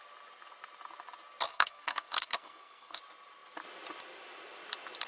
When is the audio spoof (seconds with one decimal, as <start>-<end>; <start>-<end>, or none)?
1.5-3.0